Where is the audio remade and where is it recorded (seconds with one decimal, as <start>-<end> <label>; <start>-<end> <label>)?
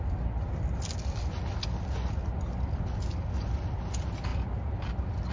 0.0-5.3 recorded